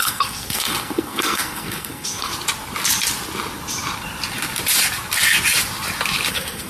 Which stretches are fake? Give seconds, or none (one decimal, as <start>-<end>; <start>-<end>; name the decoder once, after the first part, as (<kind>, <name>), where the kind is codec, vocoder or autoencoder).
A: 0.0-2.3 (codec, SNAC); 6.3-6.7